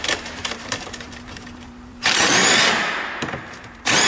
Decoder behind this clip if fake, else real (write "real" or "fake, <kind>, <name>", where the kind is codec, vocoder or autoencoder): fake, vocoder, BigVGAN v2